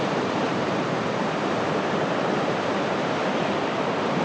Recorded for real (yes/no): no